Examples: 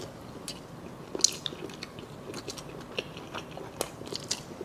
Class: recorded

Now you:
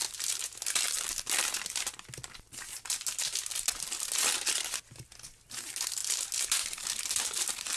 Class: recorded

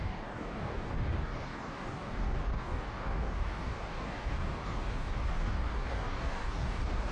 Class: remade